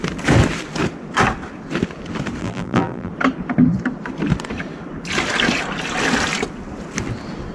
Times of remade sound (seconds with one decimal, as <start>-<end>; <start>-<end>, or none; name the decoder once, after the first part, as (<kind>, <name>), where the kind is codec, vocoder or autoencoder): 2.4-3.1 (vocoder, BigVGAN v2)